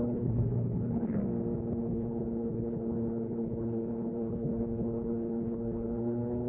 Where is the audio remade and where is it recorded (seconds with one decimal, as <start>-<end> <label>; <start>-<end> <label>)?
0.0-1.2 remade; 1.2-1.8 recorded; 1.8-6.5 remade